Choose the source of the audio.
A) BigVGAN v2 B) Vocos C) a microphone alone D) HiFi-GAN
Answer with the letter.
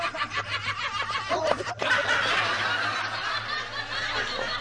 C